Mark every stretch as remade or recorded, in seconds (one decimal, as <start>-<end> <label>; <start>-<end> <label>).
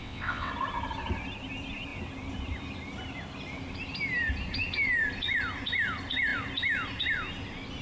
0.0-0.5 remade; 0.5-7.8 recorded